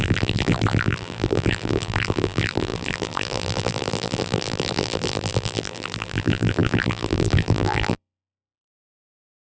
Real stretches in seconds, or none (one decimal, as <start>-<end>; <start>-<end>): none